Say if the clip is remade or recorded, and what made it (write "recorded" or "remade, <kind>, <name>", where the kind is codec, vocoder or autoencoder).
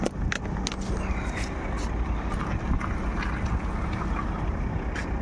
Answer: recorded